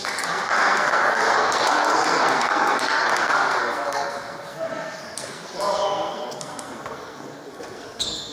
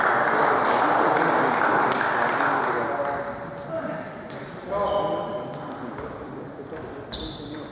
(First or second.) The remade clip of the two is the first